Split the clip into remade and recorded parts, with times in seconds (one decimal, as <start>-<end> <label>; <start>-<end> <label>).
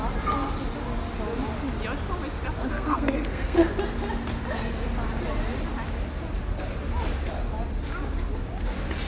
0.0-2.7 recorded; 2.7-3.7 remade; 3.7-9.1 recorded